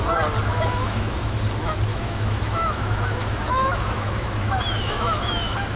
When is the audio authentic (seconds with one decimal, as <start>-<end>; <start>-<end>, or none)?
0.0-0.5; 1.4-1.9